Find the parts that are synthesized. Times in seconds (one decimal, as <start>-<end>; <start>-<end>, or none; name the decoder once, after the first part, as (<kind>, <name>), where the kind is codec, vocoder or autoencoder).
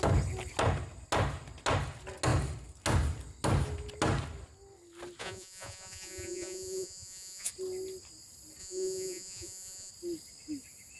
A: 5.2-7.5 (vocoder, Vocos); 8.6-9.9